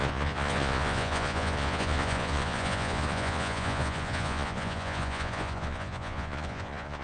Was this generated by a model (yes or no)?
yes